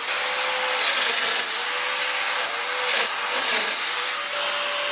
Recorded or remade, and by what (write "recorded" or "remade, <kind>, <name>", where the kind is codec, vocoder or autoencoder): recorded